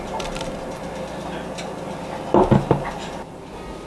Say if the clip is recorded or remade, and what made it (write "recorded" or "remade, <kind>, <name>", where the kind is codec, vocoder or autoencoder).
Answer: recorded